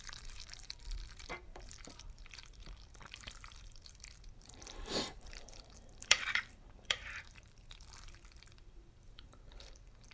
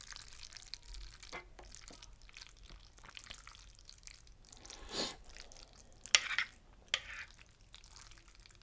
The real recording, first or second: second